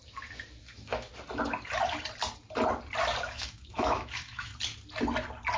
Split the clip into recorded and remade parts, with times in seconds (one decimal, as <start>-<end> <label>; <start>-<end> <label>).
0.0-0.6 recorded; 0.6-1.1 remade; 1.1-3.2 recorded; 3.2-4.5 remade; 4.5-5.6 recorded